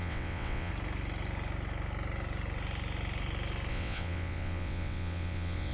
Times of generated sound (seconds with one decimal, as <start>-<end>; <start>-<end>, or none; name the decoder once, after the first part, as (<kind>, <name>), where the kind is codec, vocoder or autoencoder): 0.0-0.7 (vocoder, WaveNeXt); 3.7-5.7